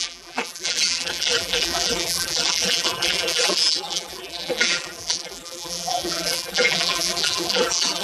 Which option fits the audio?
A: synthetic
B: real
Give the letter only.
A